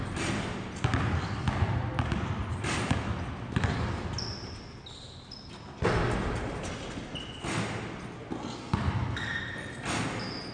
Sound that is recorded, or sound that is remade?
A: recorded